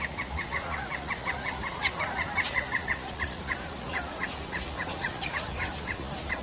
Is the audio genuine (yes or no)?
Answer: no